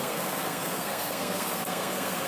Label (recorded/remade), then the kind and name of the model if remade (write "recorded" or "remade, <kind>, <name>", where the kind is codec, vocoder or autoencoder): remade, codec, SNAC